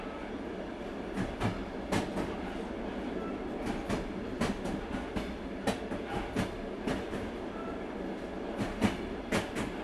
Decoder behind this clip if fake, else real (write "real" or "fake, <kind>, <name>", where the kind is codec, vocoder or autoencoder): real